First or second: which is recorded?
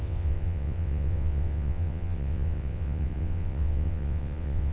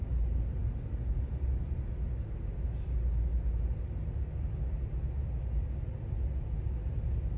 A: second